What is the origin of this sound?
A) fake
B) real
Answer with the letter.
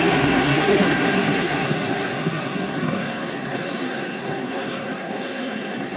A